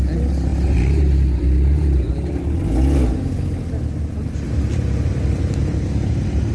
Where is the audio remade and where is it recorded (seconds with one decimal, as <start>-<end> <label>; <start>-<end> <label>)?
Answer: 0.0-6.5 recorded